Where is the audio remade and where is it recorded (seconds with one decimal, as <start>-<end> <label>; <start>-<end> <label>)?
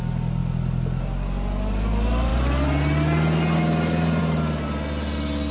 0.0-5.5 recorded